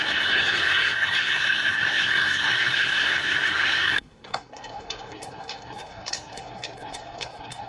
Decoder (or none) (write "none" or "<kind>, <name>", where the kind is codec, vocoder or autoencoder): codec, SNAC